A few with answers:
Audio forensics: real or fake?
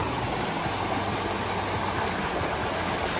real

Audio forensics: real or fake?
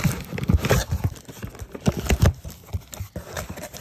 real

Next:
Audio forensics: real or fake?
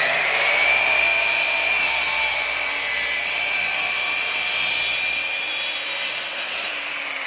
fake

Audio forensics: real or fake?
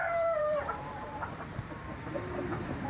fake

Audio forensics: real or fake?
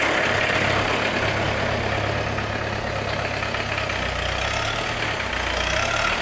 real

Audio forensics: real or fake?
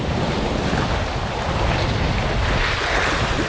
fake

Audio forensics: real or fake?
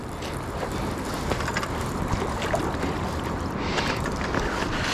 real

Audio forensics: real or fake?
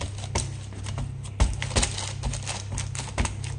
real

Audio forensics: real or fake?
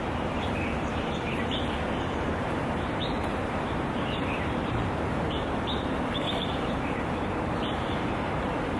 fake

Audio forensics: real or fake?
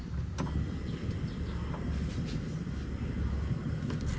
real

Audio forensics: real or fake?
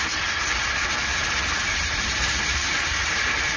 fake